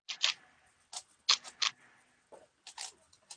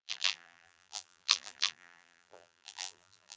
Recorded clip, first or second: first